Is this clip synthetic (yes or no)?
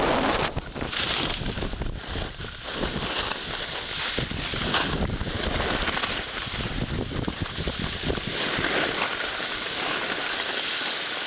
no